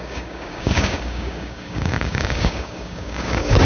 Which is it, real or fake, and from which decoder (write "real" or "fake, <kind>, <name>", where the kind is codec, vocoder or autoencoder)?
fake, codec, DAC